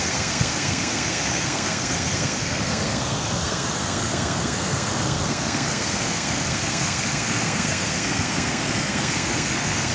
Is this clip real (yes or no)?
no